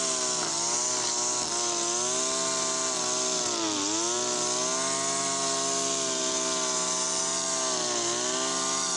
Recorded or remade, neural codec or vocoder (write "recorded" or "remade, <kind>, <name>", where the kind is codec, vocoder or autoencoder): recorded